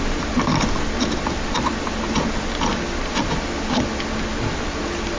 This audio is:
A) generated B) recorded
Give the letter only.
B